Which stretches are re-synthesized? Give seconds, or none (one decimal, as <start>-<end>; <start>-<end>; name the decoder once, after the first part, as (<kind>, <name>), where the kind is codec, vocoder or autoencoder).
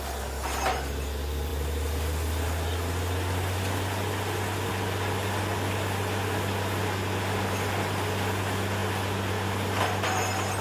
none